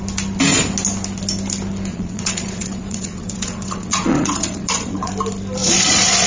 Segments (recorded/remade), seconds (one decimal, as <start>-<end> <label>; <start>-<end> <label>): 0.0-1.9 recorded; 1.9-5.1 remade; 5.1-5.6 recorded; 5.6-6.3 remade